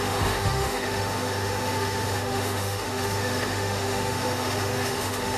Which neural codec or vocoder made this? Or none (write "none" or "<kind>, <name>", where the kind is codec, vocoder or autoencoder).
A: autoencoder, DAC-VAE